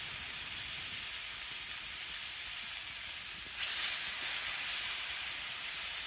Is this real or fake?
real